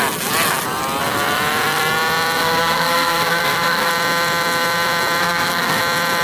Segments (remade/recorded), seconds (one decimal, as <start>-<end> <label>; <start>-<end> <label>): 0.0-2.4 recorded; 2.4-3.9 remade; 3.9-5.2 recorded; 5.2-5.8 remade; 5.8-6.2 recorded